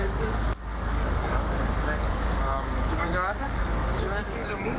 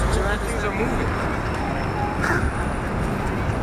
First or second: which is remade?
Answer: first